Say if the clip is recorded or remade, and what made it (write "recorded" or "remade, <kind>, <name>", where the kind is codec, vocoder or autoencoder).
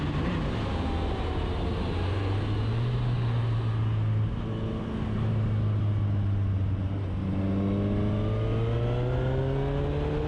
recorded